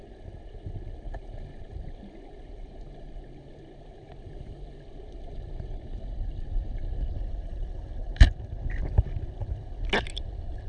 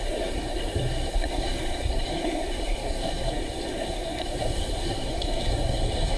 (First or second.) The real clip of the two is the first